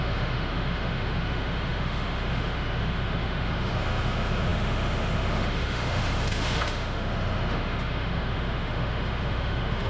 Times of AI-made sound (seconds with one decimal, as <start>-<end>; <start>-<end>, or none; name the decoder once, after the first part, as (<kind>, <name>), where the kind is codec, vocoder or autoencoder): 0.0-9.9 (autoencoder, DAC-VAE)